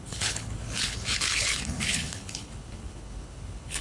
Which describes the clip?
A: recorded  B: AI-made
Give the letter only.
B